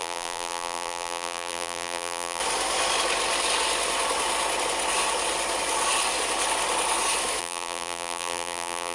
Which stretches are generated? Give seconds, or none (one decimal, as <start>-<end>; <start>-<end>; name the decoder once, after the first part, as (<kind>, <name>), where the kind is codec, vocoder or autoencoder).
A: 0.0-2.4 (vocoder, BigVGAN v2); 7.4-8.9

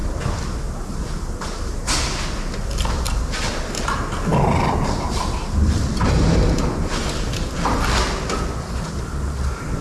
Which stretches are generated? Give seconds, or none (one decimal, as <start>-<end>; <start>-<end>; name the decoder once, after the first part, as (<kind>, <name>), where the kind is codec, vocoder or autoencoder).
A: none

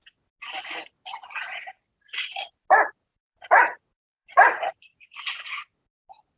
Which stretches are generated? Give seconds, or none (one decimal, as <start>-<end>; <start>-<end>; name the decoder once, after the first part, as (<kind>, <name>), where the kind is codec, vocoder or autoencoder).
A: 3.1-5.8 (vocoder, BigVGAN v2)

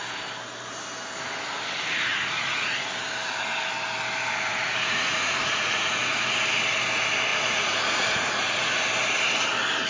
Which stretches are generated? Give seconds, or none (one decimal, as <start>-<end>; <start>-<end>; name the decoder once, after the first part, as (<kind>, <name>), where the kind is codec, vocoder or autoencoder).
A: 2.1-2.9 (vocoder, Vocos); 4.5-6.2; 7.3-8.7

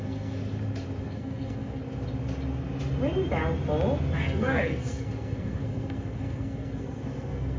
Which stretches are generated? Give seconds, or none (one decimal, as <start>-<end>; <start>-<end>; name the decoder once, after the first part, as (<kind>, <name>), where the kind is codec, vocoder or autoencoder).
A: 0.0-0.4 (codec, SNAC); 1.0-1.8; 4.2-7.6